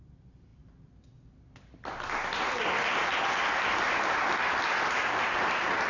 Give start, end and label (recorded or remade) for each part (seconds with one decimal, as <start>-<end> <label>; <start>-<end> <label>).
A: 0.0-5.9 recorded